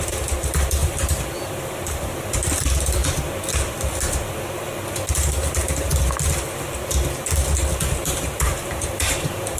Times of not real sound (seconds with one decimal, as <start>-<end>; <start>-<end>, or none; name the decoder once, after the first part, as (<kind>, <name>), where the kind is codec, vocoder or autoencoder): 0.0-3.0 (vocoder, BigVGAN v2); 5.1-5.9; 7.9-9.6